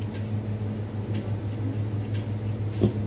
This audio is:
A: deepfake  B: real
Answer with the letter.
B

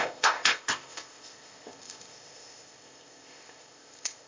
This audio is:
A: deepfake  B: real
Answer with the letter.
A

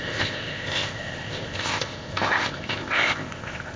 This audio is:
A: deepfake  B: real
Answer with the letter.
A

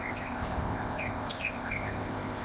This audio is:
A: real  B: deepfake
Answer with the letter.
B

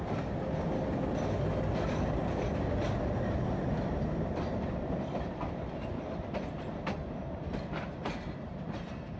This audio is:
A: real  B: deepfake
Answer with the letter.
A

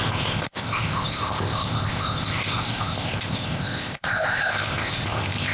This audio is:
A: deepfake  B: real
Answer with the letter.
A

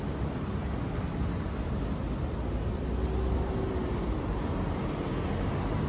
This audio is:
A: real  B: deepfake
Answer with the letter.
A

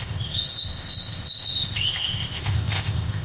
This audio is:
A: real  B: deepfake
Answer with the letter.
B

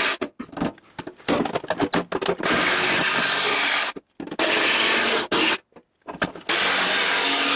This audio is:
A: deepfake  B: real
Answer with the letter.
B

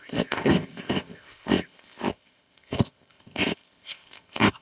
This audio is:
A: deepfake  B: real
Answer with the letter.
A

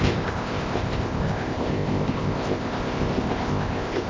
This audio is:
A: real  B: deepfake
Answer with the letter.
B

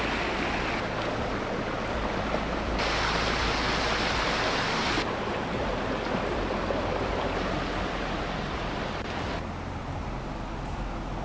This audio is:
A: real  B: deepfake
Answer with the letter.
A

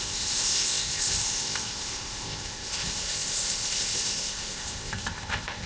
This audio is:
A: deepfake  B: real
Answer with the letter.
A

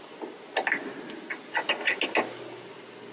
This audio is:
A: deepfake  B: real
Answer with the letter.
B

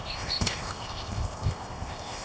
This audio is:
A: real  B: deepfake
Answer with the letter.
B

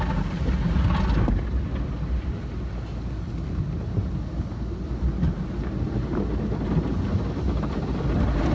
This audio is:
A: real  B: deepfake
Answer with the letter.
A